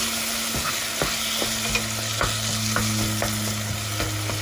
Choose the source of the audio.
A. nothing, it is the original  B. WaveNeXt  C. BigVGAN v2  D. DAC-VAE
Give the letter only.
A